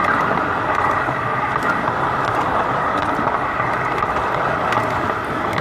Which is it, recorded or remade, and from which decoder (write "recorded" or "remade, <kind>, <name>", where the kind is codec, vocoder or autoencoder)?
recorded